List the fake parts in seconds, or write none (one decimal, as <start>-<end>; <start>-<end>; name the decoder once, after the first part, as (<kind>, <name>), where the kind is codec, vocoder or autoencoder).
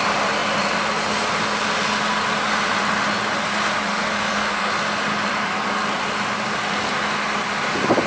3.9-4.7 (codec, SNAC)